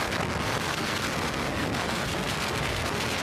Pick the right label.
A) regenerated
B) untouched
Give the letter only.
A